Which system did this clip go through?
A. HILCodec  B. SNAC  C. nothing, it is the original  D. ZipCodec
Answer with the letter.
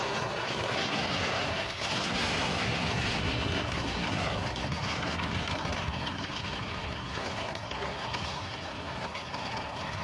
B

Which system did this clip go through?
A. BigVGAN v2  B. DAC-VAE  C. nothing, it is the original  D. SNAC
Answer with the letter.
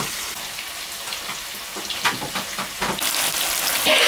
C